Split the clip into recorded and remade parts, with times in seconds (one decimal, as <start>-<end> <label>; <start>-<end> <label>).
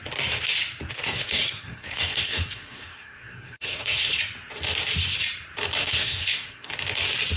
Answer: 0.0-0.9 recorded; 0.9-4.1 remade; 4.1-5.8 recorded; 5.8-6.7 remade; 6.7-7.4 recorded